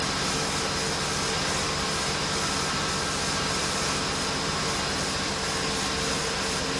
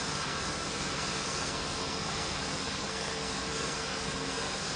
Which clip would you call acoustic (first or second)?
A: first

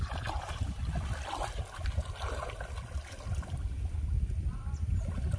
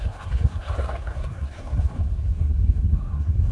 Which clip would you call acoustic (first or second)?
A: first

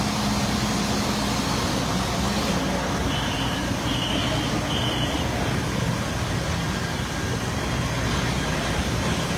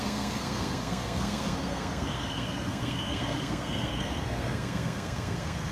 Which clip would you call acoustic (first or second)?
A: first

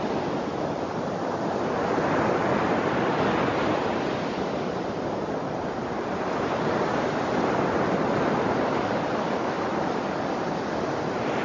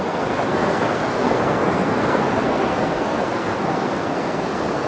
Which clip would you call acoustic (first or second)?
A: first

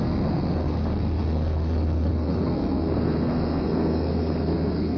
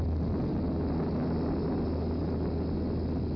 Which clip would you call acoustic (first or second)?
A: second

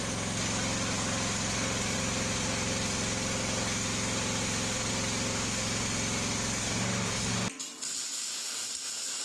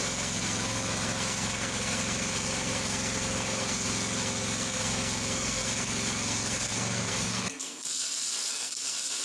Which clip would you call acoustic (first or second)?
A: first